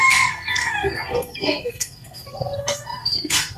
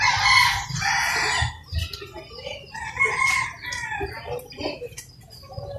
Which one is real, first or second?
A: second